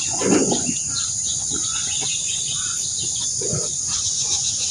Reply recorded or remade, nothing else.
remade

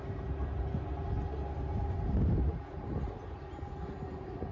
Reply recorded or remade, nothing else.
recorded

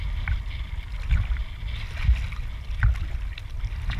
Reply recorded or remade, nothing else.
recorded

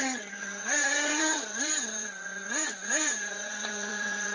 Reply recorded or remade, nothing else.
remade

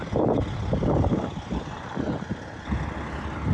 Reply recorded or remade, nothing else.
recorded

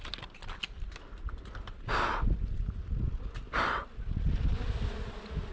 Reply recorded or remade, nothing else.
recorded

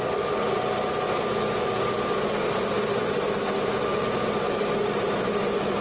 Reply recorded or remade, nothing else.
recorded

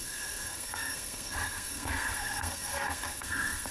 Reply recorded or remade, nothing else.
remade